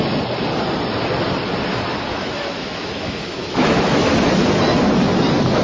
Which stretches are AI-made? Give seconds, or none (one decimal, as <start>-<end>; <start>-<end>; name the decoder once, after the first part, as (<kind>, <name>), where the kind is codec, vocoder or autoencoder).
2.1-4.1 (autoencoder, DAC-VAE)